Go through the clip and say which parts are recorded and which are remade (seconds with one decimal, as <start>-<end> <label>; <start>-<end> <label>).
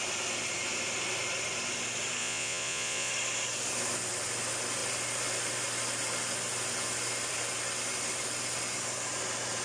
0.0-2.2 recorded; 2.2-3.1 remade; 3.1-9.6 recorded